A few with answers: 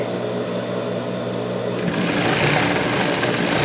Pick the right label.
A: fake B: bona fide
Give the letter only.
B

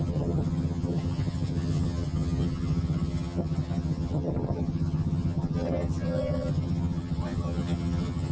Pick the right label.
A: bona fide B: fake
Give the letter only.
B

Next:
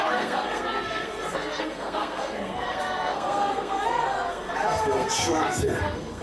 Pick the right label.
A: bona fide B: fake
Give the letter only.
B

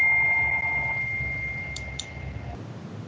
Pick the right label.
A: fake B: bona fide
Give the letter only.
B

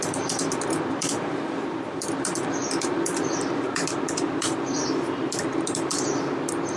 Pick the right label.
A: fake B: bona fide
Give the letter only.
A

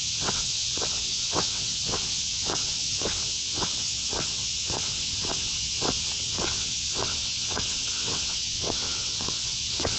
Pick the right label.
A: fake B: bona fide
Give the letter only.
A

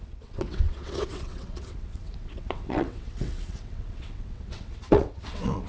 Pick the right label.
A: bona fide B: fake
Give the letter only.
B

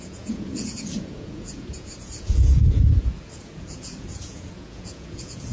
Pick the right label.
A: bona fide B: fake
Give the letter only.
B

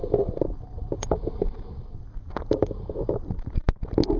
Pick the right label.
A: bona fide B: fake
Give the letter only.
A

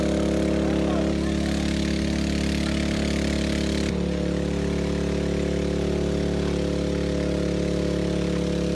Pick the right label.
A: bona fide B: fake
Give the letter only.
A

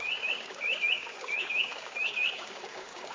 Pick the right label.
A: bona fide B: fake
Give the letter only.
B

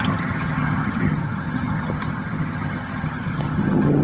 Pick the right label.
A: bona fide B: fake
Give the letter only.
B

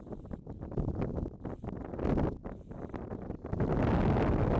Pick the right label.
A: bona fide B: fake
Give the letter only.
A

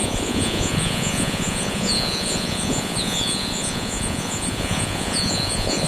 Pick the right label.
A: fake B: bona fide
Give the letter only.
A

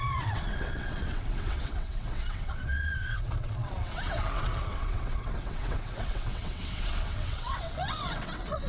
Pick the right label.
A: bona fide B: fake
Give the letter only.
B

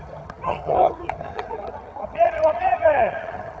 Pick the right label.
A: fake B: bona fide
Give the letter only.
A